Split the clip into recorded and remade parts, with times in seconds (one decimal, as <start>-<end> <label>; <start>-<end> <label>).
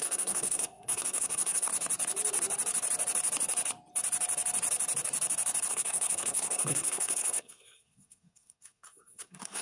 0.0-1.7 remade; 1.7-5.7 recorded; 5.7-9.6 remade